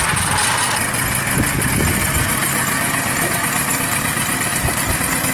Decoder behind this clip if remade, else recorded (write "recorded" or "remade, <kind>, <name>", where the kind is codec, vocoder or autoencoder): recorded